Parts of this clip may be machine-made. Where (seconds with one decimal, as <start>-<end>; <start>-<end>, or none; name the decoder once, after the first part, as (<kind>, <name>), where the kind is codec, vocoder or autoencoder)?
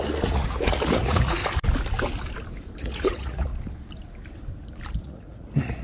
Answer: 0.0-1.4 (vocoder, Vocos); 2.8-3.5; 5.0-5.8